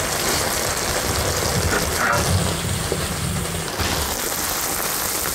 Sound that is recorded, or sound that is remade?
recorded